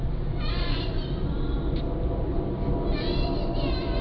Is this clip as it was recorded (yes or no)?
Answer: yes